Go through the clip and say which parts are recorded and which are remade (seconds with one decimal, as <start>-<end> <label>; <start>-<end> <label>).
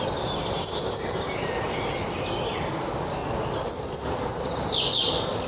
0.0-5.5 recorded